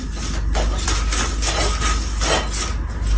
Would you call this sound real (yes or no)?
yes